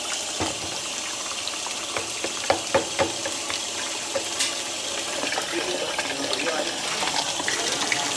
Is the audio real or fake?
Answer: real